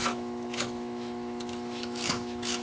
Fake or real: fake